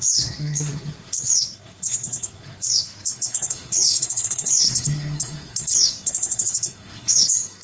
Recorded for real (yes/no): no